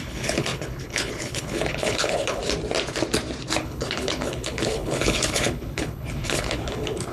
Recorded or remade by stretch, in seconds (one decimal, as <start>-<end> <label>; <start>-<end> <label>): 0.0-2.4 remade; 2.4-3.6 recorded; 3.6-7.1 remade